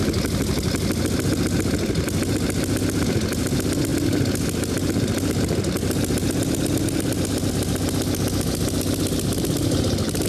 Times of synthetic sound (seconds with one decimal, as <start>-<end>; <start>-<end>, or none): none